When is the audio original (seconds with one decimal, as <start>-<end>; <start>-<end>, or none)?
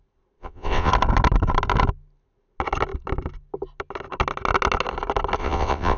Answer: 0.0-0.4; 0.9-5.4